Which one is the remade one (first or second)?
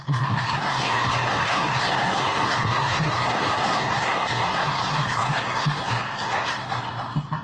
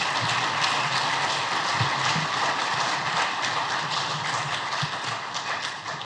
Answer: first